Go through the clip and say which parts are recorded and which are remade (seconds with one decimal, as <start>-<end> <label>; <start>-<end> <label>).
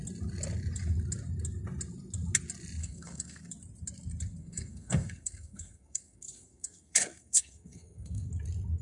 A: 0.0-2.8 recorded; 2.8-3.5 remade; 3.5-4.4 recorded; 4.4-8.3 remade; 8.3-8.8 recorded